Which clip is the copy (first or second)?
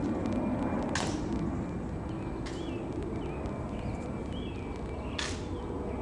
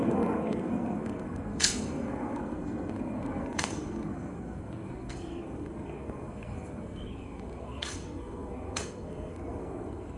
second